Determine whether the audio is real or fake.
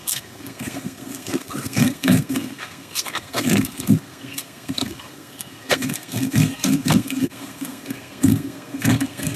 fake